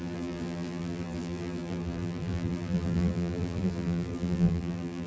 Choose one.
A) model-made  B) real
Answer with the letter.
A